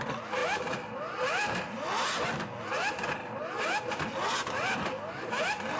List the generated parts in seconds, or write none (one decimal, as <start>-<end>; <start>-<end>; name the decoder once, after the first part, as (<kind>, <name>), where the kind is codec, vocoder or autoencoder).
none